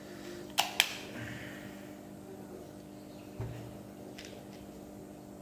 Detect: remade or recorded recorded